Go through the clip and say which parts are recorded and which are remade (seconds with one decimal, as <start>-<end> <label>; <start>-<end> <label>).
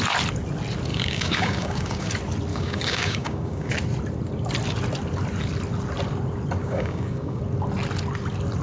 0.0-0.9 recorded; 0.9-2.1 remade; 2.1-2.5 recorded; 2.5-3.7 remade; 3.7-6.6 recorded; 6.6-7.4 remade; 7.4-8.6 recorded